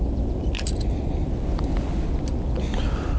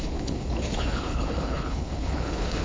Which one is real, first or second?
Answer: first